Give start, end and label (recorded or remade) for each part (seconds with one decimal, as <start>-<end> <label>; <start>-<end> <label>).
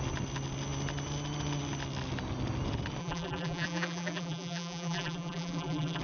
0.0-3.0 recorded; 3.0-6.0 remade